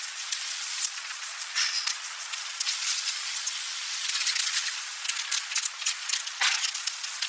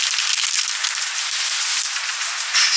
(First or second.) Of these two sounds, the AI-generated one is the first